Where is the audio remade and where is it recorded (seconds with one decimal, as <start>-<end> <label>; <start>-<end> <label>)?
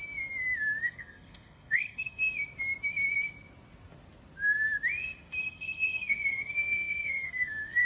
0.0-0.8 recorded; 0.8-2.2 remade; 2.2-5.4 recorded; 5.4-7.9 remade